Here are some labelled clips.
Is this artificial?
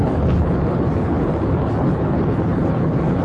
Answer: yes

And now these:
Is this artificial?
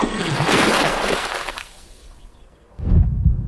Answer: yes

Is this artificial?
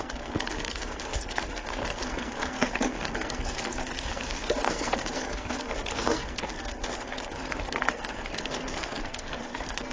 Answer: yes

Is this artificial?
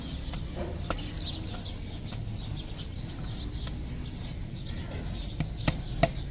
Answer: no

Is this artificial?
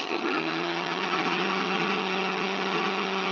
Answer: yes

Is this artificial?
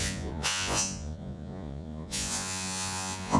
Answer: yes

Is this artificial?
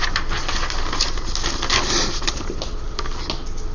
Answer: no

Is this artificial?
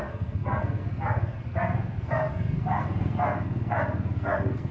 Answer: yes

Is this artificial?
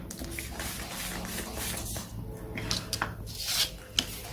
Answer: no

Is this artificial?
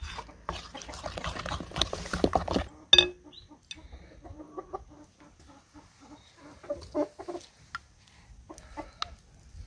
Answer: no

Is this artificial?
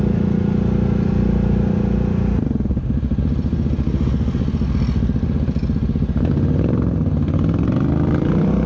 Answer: no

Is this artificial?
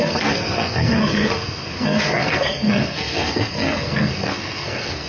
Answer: yes